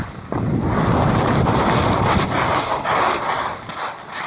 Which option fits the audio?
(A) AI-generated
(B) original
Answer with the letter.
B